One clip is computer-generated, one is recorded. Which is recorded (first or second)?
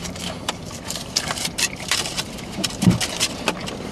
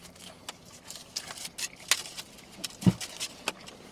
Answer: second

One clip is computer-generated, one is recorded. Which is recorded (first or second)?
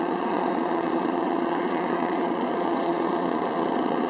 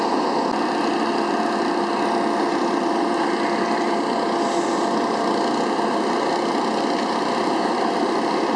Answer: second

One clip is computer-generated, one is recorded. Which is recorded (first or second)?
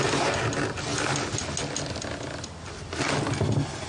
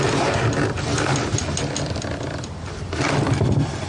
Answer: first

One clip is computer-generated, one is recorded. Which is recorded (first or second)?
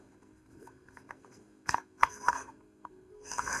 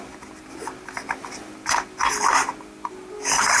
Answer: second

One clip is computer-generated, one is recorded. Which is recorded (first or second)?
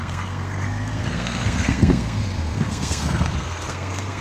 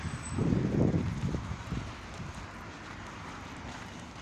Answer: second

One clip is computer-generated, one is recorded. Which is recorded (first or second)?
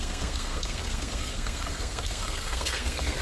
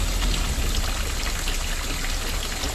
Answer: second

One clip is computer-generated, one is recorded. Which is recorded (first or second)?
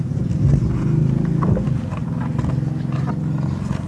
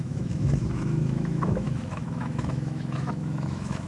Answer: first